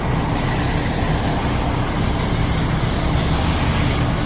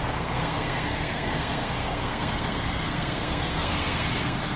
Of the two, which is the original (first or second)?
first